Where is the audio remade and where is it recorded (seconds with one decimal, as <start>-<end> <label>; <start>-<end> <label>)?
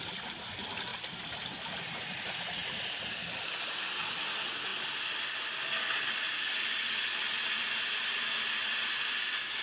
0.0-0.9 recorded; 0.9-2.2 remade; 2.2-2.6 recorded; 2.6-3.5 remade; 3.5-9.6 recorded